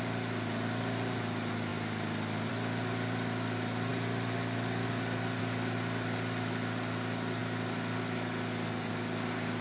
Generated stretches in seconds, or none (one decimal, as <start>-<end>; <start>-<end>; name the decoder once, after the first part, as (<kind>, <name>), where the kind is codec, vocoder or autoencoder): none